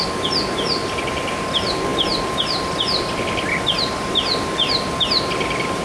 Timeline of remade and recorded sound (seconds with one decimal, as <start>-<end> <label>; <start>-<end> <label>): 0.0-5.8 recorded